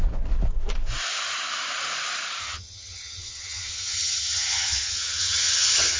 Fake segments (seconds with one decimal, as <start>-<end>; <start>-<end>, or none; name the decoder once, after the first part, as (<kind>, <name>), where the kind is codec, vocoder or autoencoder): 2.4-6.0 (vocoder, HiFi-GAN)